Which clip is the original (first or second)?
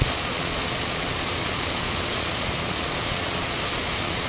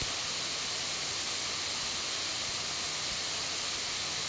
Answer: second